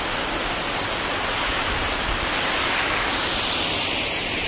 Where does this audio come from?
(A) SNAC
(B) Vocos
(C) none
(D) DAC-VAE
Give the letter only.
C